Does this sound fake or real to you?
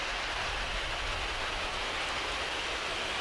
real